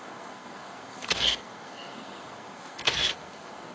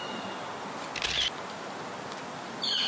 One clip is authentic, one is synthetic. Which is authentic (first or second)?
second